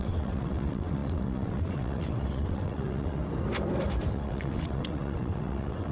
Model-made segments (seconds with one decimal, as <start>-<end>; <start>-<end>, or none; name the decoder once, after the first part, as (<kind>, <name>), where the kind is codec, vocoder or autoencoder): 0.0-3.2 (vocoder, WaveNeXt); 4.1-5.9